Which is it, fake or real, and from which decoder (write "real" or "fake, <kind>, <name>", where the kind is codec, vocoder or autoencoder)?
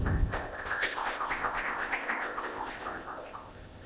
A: fake, codec, ZipCodec